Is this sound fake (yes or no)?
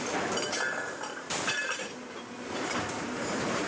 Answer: yes